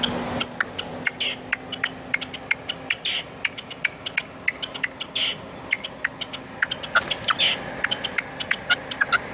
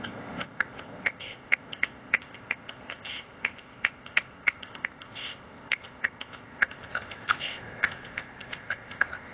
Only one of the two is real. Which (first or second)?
first